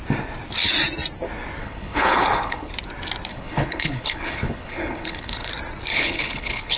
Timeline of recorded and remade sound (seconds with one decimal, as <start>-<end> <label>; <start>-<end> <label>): 0.0-1.6 recorded; 1.6-2.7 remade; 2.7-3.3 recorded; 3.3-5.5 remade; 5.5-5.9 recorded; 5.9-6.8 remade

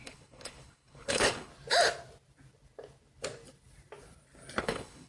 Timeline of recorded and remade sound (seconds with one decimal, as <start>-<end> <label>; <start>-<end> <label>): 0.0-1.5 remade; 1.5-4.6 recorded; 4.6-5.1 remade

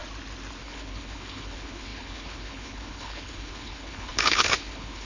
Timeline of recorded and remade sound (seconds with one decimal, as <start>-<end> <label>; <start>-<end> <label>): 0.0-0.6 recorded; 0.6-5.1 remade